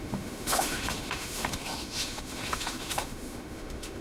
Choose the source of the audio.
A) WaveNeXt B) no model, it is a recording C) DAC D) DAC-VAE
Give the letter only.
D